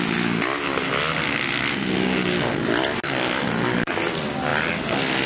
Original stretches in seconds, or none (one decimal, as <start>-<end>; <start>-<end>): 0.0-5.3